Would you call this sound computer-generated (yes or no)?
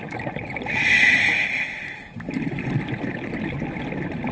no